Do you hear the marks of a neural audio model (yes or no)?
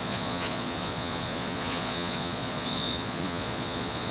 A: yes